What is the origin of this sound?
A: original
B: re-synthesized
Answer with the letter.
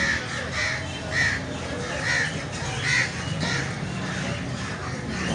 A